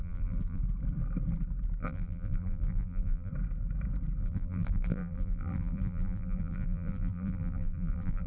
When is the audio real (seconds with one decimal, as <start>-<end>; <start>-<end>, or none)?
0.6-1.8; 3.3-4.2